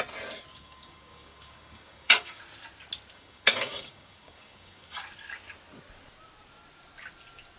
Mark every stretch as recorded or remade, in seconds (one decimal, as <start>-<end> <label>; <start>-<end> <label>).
0.0-0.5 recorded; 0.5-2.4 remade; 2.4-3.1 recorded; 3.1-5.0 remade; 5.0-7.6 recorded